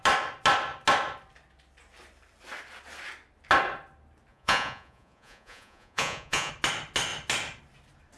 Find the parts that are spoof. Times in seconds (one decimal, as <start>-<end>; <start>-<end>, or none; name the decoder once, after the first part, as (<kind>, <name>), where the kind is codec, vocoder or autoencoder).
4.3-6.5 (vocoder, Vocos)